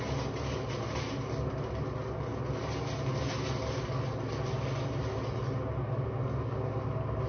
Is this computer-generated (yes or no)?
no